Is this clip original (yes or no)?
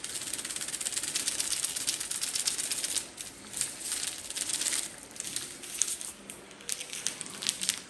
yes